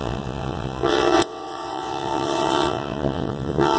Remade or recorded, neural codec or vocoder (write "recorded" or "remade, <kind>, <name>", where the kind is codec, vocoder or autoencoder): remade, vocoder, WaveNeXt